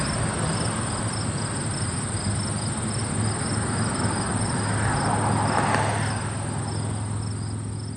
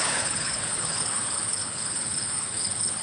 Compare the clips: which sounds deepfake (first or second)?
second